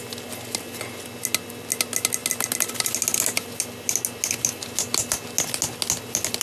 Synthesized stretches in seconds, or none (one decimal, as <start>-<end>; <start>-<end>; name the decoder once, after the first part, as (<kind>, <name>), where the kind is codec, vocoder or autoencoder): none